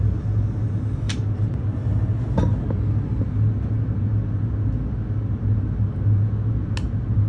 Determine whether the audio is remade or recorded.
recorded